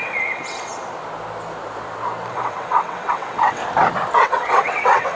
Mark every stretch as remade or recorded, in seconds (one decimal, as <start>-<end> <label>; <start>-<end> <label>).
0.0-0.7 remade; 0.7-2.3 recorded; 2.3-3.6 remade; 3.6-4.2 recorded; 4.2-5.2 remade